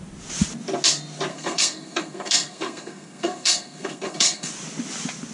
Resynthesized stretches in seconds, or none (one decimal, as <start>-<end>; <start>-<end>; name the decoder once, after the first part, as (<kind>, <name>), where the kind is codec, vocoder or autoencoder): 1.3-4.5 (codec, SNAC)